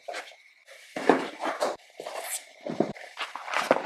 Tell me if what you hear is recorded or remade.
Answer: remade